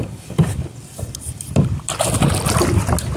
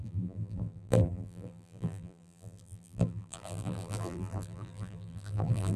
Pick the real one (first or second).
first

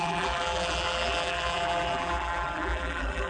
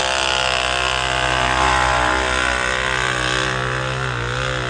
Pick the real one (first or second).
second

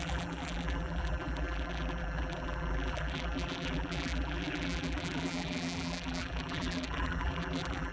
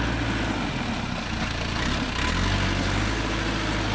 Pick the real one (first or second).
second